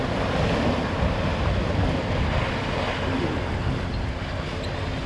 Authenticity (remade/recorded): recorded